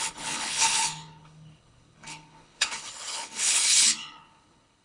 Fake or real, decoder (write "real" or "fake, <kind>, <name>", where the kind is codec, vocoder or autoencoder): fake, codec, HILCodec